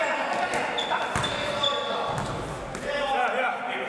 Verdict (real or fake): real